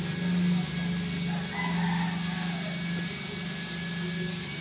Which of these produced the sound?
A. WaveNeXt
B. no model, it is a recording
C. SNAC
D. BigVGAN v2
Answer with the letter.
B